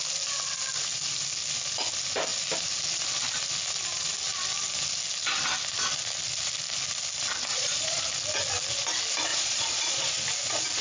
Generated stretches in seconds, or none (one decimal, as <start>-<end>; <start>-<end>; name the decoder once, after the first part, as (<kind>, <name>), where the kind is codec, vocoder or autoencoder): 7.5-8.0 (vocoder, Vocos); 9.3-10.1